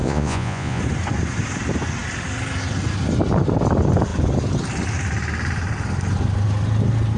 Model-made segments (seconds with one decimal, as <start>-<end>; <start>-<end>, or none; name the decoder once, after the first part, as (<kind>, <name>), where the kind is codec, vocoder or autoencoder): 0.0-0.8 (vocoder, Vocos)